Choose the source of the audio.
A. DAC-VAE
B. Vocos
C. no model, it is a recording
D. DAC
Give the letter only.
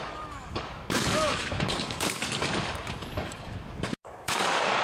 D